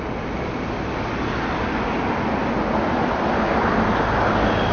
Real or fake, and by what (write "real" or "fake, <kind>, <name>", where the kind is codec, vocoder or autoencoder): real